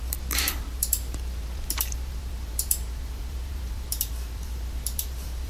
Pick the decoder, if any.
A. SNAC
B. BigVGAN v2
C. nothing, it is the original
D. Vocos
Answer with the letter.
B